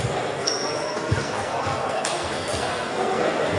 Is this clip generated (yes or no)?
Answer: yes